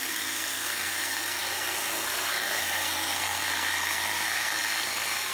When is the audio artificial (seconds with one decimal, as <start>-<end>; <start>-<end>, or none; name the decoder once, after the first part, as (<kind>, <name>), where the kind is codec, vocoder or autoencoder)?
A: 0.0-5.3 (codec, SNAC)